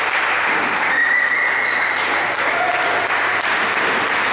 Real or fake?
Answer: real